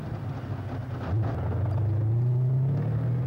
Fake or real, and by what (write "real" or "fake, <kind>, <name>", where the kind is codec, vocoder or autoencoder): real